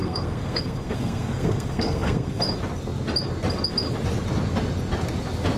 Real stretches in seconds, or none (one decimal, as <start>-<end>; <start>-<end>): 2.4-5.6